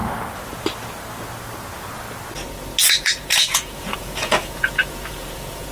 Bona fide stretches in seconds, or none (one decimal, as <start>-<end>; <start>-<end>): 0.0-2.8